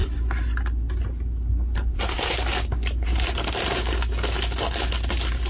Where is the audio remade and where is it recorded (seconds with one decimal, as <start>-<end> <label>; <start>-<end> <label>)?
0.0-5.5 recorded